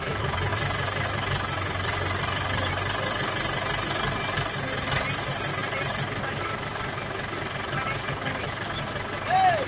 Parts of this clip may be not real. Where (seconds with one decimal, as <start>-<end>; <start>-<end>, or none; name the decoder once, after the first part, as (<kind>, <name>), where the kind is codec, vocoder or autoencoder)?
0.5-2.7 (vocoder, BigVGAN v2)